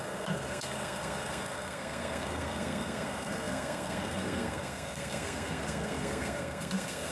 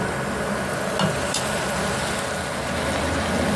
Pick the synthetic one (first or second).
first